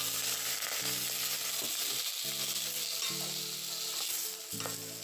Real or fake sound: real